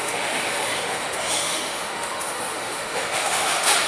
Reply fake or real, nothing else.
fake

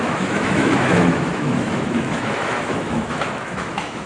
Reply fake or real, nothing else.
fake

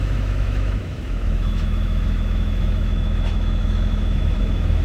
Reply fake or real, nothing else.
fake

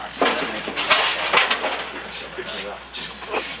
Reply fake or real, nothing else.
real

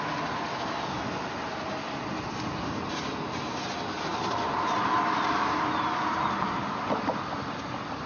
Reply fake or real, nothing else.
real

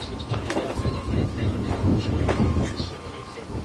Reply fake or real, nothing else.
fake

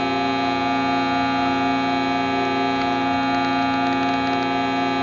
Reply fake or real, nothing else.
real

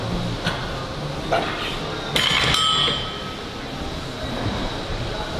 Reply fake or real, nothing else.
real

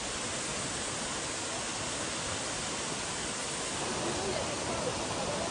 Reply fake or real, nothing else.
real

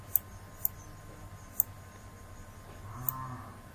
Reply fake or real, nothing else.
real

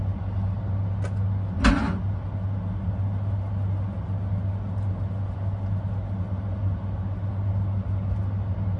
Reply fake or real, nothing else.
real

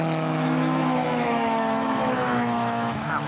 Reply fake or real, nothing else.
fake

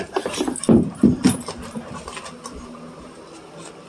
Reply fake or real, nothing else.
real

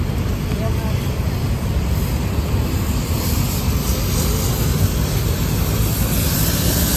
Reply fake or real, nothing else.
real